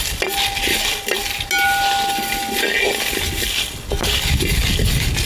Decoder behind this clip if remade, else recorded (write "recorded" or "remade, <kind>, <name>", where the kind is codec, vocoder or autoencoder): recorded